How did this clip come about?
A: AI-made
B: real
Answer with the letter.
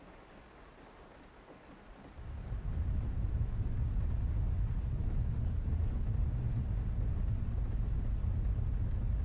B